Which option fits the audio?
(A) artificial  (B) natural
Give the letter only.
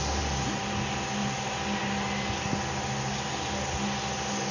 B